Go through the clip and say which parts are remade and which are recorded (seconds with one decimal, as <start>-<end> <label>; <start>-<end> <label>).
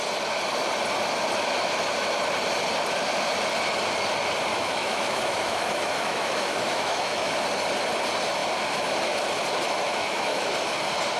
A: 0.0-4.5 recorded; 4.5-7.3 remade; 7.3-9.8 recorded; 9.8-10.5 remade; 10.5-11.2 recorded